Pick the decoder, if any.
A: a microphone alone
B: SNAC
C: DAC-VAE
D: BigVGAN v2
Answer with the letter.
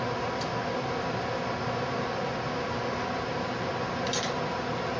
A